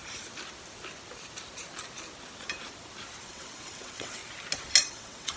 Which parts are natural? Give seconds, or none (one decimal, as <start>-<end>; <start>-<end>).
0.0-3.2; 4.2-4.9